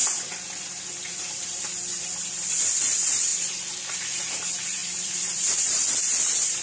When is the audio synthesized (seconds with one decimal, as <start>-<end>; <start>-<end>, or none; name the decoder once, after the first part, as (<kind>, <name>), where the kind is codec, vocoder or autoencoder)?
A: 1.1-3.3 (vocoder, BigVGAN v2); 3.9-6.6